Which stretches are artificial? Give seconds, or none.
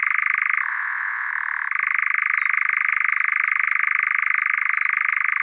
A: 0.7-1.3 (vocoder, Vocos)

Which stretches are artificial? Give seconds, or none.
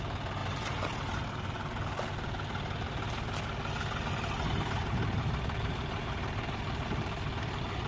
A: none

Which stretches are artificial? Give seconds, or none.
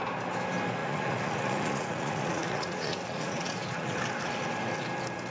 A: 0.8-4.0 (vocoder, Vocos)